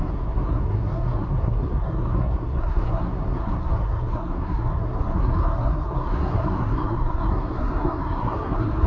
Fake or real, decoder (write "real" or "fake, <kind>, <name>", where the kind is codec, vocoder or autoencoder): fake, codec, SNAC